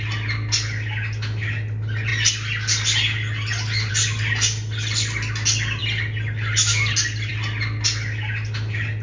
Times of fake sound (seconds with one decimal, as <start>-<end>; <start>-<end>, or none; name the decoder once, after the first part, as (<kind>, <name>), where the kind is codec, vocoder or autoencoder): none